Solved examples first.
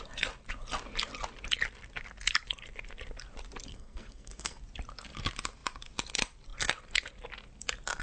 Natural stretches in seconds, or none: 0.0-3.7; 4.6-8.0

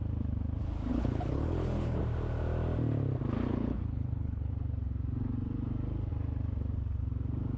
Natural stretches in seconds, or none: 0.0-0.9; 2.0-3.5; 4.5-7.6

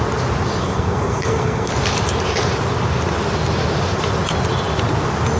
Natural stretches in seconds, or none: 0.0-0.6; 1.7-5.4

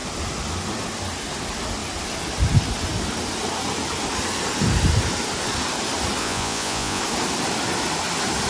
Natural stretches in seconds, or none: 0.0-6.2; 7.0-8.5